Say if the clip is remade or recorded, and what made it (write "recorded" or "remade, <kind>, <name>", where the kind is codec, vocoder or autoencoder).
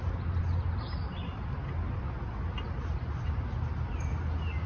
recorded